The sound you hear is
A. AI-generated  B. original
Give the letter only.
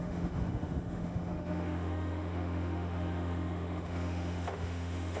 A